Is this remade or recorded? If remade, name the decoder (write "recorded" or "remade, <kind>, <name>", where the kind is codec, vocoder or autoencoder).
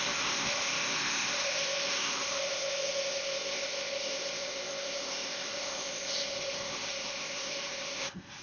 remade, codec, ZipCodec